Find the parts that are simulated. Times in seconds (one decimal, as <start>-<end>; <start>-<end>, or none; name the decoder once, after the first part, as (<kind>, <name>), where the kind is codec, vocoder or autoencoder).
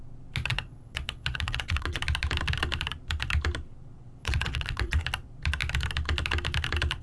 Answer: 0.5-2.0 (vocoder, WaveNeXt); 4.2-5.0